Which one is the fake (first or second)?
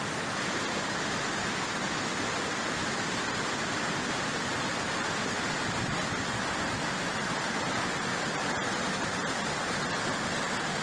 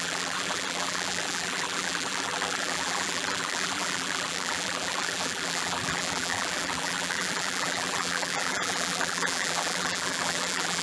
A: second